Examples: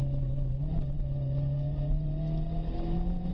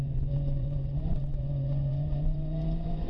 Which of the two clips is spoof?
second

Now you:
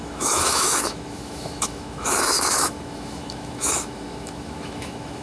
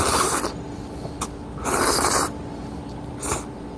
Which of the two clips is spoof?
first